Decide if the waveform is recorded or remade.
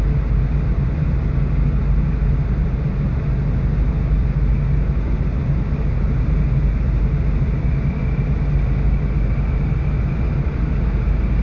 recorded